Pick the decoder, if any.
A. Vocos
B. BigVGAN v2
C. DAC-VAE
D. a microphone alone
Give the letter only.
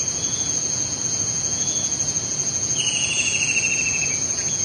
A